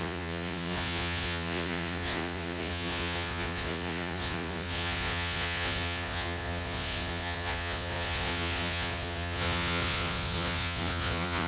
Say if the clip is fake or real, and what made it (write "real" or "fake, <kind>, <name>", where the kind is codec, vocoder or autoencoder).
fake, vocoder, Vocos